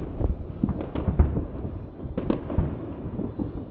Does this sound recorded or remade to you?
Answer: recorded